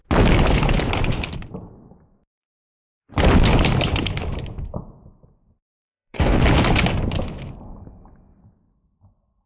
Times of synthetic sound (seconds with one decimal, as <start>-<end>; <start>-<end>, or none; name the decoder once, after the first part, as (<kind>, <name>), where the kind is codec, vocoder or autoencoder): 5.7-6.4 (codec, SNAC)